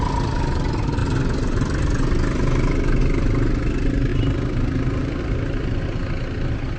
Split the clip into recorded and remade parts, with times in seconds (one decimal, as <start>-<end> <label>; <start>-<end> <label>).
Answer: 0.0-6.8 recorded